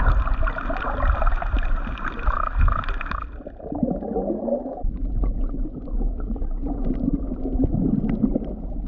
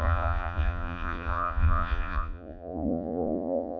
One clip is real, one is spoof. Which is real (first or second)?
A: first